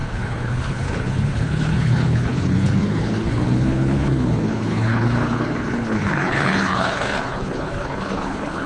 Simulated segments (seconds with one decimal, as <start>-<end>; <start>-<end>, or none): 0.0-8.7